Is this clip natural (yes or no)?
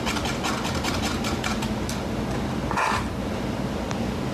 yes